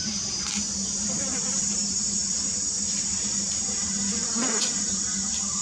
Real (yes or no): no